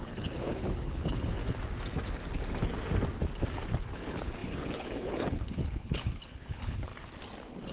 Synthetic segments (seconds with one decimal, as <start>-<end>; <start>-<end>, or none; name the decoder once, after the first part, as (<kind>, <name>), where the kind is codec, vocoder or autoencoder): 0.0-1.4 (codec, HILCodec); 3.8-6.9